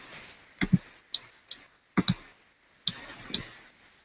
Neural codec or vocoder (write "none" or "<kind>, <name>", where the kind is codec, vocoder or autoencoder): none